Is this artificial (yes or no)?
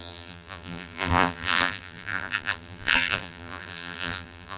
yes